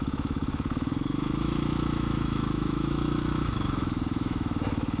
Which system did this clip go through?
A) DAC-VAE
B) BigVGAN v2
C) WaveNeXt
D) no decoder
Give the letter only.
A